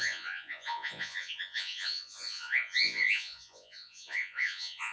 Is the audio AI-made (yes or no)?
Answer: yes